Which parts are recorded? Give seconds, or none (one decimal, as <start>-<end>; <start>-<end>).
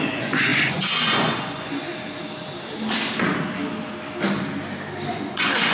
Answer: 1.9-5.1